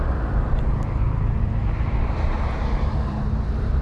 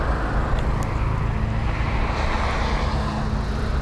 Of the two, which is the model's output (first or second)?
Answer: first